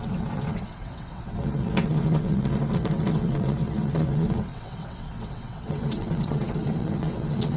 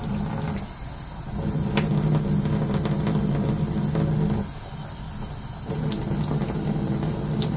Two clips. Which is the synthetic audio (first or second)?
first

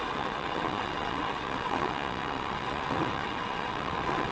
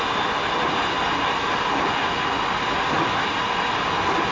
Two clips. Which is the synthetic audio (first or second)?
first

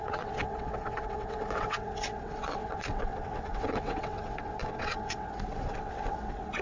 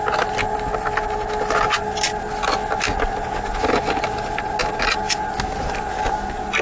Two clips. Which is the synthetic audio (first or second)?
first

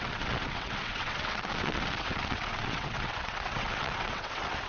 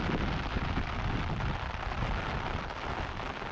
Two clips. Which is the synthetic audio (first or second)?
first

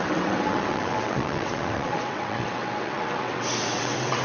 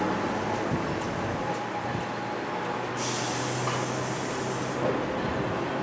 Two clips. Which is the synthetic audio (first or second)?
first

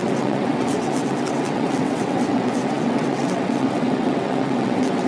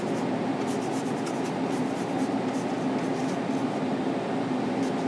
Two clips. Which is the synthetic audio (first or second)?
first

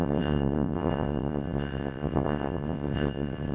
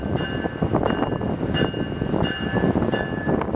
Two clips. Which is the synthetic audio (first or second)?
first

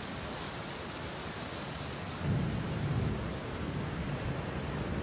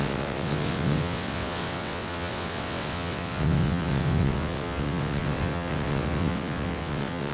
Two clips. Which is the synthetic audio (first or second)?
second